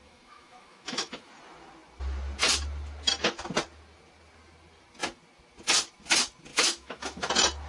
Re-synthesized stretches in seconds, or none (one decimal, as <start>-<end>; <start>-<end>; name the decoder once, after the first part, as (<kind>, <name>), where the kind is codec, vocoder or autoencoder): 0.0-1.3 (autoencoder, DAC-VAE); 6.5-7.3